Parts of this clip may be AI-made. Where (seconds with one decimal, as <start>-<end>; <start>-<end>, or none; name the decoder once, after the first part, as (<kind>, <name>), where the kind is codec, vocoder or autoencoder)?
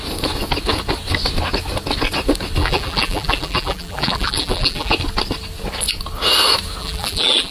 2.6-4.9 (vocoder, BigVGAN v2); 6.8-7.5